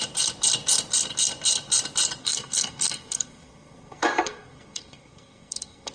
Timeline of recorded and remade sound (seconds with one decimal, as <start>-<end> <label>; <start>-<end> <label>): 0.0-2.2 recorded; 2.2-5.9 remade